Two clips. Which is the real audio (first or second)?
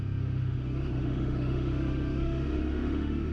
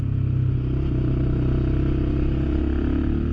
second